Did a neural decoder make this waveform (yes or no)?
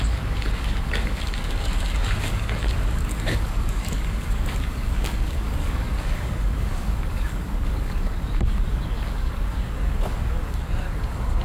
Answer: yes